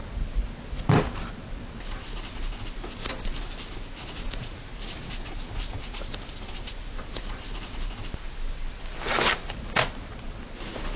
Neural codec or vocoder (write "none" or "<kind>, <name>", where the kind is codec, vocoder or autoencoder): none